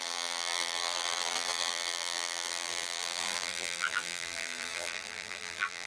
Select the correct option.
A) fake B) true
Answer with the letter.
A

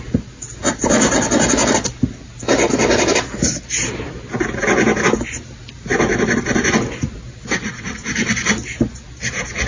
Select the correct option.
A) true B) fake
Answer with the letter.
A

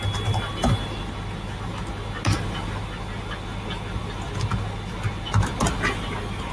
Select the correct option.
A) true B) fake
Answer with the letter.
A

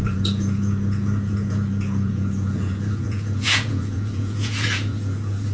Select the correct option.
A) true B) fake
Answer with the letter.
B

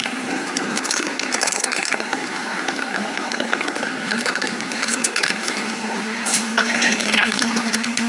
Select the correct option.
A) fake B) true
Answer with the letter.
A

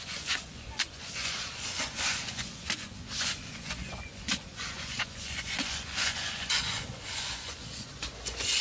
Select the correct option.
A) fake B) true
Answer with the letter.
A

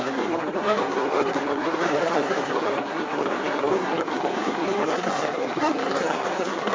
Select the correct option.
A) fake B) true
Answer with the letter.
A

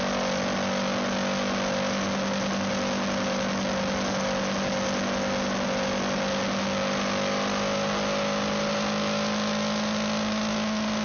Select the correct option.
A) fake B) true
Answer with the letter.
B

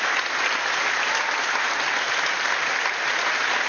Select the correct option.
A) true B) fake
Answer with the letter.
A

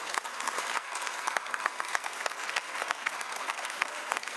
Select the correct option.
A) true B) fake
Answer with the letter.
B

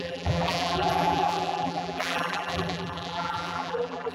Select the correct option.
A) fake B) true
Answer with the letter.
A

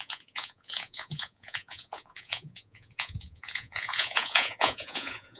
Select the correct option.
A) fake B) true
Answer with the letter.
A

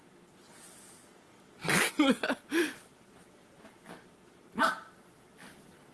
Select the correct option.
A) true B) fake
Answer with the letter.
A